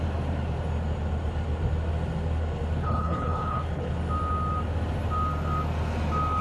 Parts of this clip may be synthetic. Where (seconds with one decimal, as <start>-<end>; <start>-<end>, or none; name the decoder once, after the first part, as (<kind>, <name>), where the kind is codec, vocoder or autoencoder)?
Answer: 2.8-3.9 (codec, HILCodec)